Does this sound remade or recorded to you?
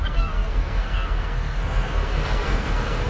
remade